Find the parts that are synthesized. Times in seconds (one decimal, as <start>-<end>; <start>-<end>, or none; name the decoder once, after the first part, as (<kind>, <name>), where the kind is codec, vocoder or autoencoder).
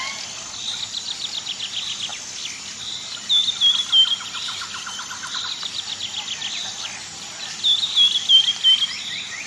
none